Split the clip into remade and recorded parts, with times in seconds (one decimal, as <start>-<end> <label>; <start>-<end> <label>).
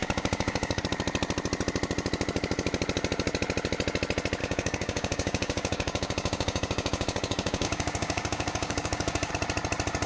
0.0-0.8 remade; 0.8-4.4 recorded; 4.4-9.3 remade; 9.3-10.1 recorded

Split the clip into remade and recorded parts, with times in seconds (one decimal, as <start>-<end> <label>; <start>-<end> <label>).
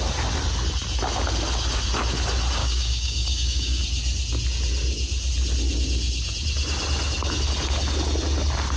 0.0-2.6 recorded; 2.6-3.8 remade; 3.8-8.8 recorded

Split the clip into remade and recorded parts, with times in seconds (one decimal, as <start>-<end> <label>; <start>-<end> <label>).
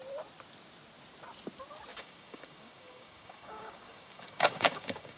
0.0-1.9 recorded; 1.9-5.2 remade